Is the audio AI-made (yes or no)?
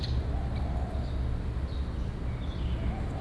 no